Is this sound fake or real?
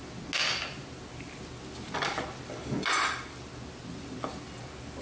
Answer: real